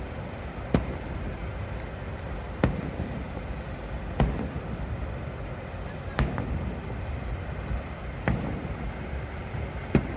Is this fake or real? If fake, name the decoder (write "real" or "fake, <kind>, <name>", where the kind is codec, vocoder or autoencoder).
real